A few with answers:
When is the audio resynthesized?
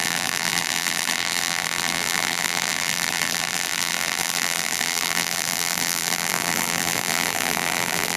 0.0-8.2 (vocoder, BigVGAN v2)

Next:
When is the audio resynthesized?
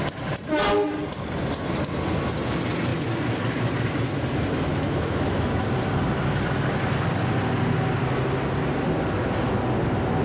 4.7-5.6 (autoencoder, DAC-VAE)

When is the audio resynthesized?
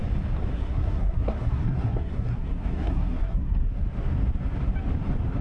0.5-3.7 (codec, SNAC)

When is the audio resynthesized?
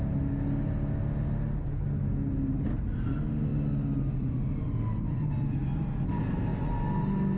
none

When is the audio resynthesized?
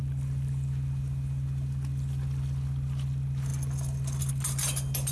none